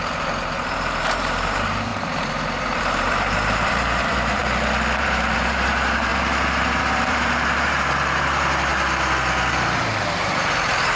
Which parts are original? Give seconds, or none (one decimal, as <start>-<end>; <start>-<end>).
4.4-5.0; 8.7-9.5